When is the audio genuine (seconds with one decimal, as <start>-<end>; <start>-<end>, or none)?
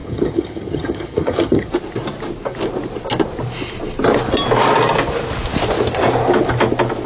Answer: 1.7-7.1